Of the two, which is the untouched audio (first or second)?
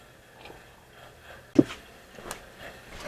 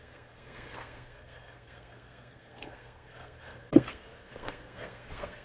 first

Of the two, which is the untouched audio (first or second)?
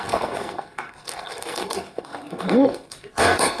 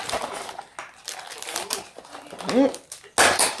second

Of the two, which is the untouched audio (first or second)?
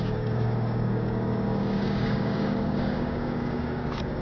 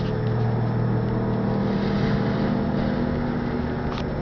second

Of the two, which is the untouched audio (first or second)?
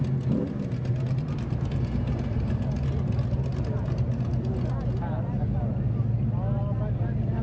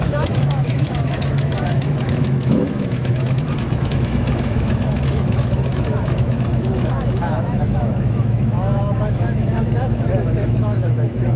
first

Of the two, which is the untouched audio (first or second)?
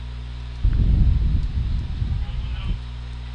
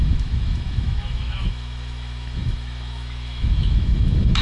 first